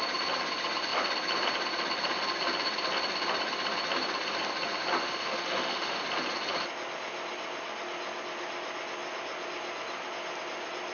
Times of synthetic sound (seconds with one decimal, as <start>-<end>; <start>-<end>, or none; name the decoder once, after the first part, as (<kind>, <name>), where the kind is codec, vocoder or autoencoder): 5.0-6.0 (autoencoder, DAC-VAE)